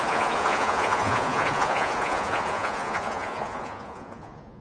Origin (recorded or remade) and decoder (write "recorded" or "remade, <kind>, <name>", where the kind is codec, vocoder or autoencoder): remade, vocoder, Vocos